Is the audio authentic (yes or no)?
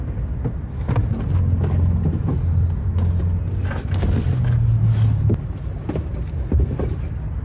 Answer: yes